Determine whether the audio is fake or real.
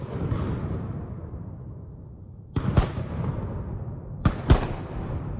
real